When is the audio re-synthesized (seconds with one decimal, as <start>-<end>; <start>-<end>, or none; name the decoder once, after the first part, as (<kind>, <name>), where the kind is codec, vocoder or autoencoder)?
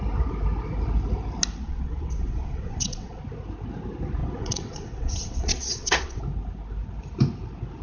1.6-3.2 (vocoder, WaveNeXt); 4.2-6.2